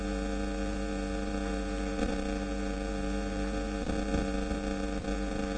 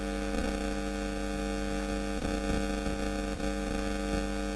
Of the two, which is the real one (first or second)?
second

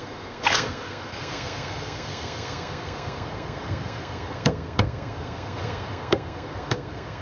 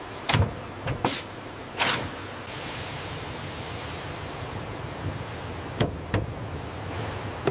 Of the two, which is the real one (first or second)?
second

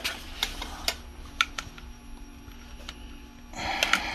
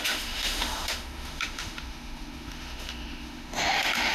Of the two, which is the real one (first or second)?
first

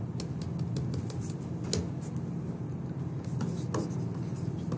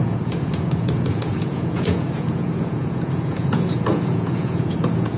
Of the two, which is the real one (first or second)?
first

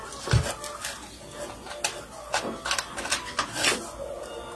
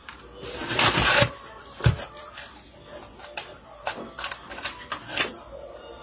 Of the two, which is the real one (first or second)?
first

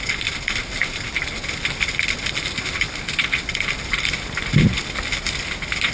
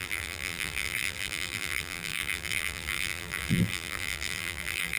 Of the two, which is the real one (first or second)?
first